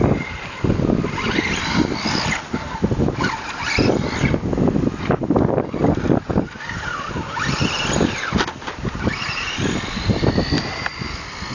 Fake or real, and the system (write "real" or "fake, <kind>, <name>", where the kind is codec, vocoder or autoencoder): real